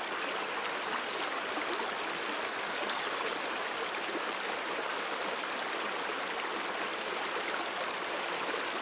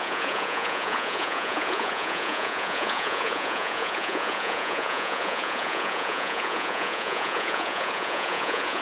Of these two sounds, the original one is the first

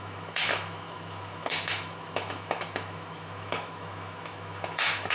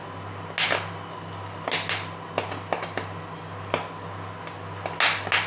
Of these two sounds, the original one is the second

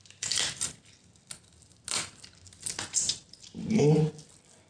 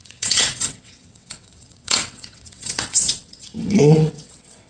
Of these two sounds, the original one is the first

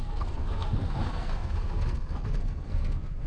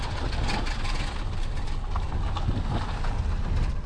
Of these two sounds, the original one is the second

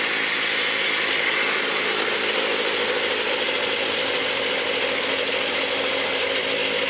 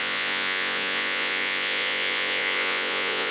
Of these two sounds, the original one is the first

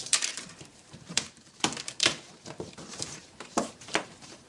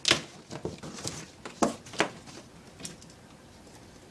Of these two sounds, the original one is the second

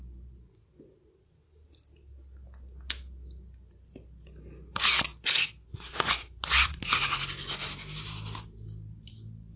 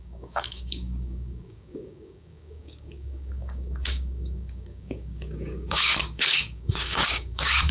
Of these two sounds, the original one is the first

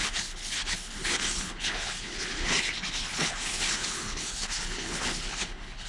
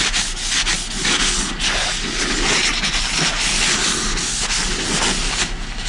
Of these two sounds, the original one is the second